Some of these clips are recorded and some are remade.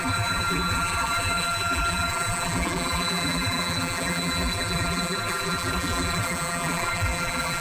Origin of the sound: remade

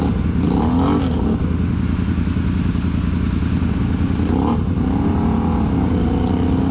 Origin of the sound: recorded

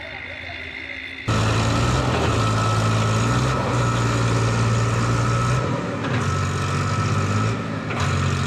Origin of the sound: recorded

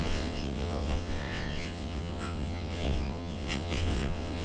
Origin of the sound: remade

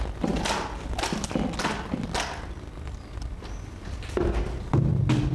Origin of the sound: recorded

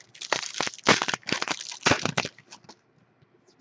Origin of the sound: recorded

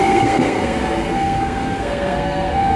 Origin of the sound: remade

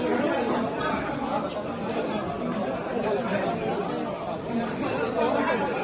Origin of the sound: recorded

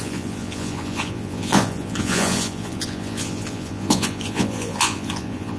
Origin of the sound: remade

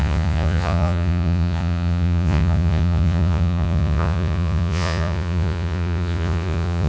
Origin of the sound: remade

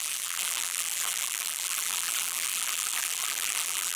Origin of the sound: remade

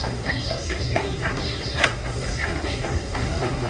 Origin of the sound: remade